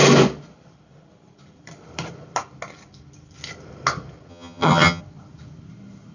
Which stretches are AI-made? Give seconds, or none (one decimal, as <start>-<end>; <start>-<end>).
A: 4.3-5.0